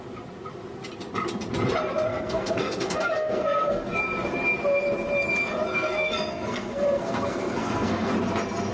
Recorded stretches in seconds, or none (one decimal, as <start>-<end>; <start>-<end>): 0.0-2.1; 4.0-5.7; 8.1-8.7